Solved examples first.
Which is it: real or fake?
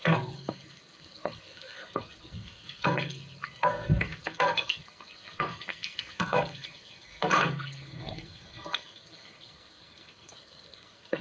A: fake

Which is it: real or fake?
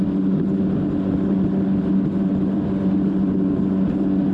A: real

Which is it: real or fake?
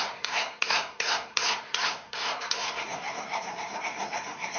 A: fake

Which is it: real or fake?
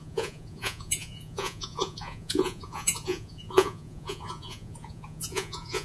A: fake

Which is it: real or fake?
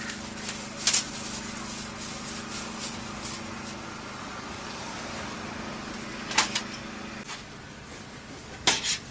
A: real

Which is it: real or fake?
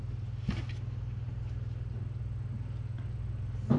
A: real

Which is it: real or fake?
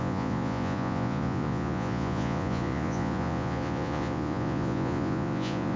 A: fake